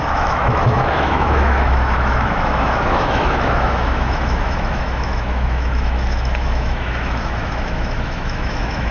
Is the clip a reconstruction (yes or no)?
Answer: yes